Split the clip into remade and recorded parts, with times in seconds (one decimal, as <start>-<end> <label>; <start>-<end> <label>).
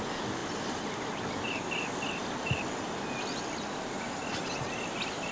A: 0.0-5.3 recorded